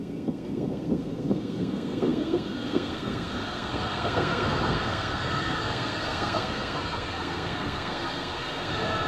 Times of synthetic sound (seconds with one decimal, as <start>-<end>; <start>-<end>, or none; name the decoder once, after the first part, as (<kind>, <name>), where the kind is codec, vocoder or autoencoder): 0.0-9.1 (codec, SNAC)